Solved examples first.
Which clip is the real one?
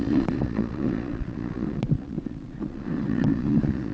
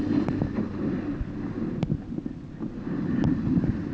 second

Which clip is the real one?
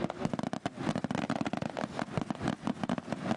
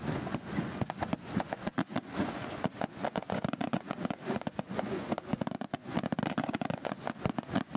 first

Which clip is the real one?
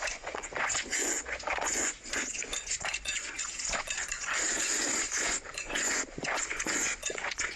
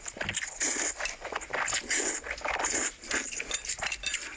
second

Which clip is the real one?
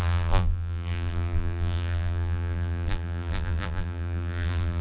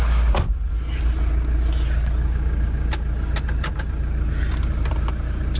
second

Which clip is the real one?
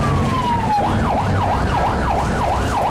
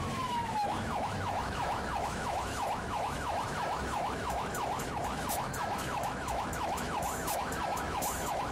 first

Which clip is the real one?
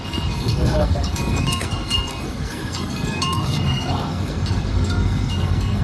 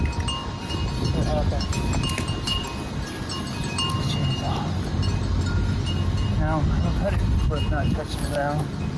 second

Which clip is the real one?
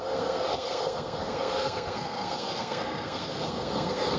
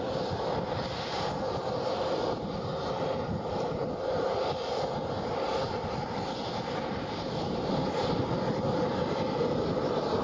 second